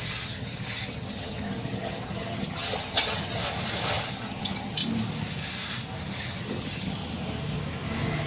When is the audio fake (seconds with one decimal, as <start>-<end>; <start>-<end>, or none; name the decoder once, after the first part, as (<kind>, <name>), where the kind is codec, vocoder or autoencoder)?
0.0-3.4 (vocoder, HiFi-GAN); 3.9-4.8; 6.1-7.0